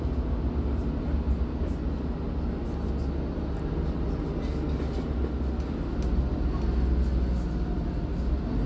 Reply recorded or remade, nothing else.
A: recorded